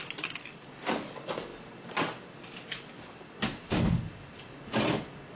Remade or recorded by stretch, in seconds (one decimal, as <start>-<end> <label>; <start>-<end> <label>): 0.0-5.3 recorded